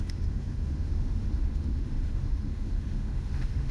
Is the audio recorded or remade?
remade